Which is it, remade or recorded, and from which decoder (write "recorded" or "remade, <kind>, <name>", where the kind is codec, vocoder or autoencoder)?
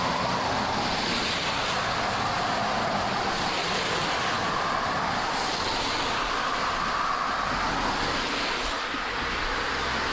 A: recorded